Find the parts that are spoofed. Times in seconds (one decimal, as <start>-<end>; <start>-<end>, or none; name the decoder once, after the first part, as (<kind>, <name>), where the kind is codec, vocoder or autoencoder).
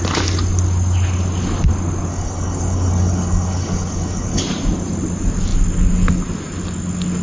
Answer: 2.1-4.4 (codec, DAC)